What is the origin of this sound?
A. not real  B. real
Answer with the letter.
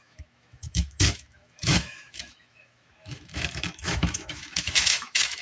A